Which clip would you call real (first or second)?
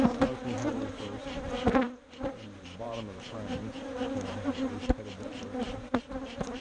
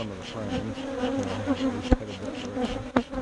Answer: second